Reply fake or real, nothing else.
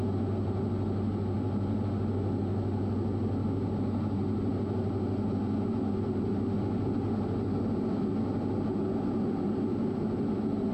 real